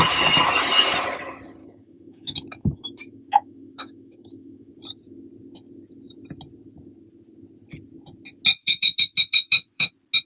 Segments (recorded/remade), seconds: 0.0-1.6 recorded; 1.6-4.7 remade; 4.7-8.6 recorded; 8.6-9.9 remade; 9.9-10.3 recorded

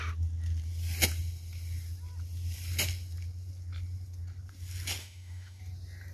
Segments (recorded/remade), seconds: 0.0-5.0 recorded; 5.0-5.6 remade; 5.6-6.1 recorded

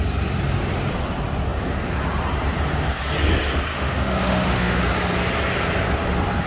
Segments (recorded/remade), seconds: 0.0-3.7 recorded; 3.7-4.8 remade; 4.8-6.5 recorded